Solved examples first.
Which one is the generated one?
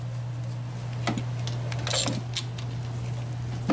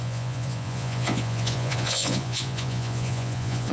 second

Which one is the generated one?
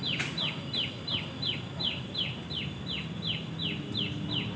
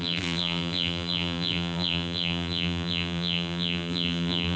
second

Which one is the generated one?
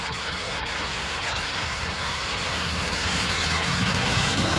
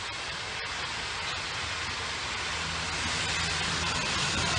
first